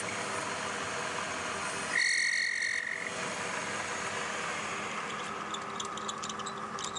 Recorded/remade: recorded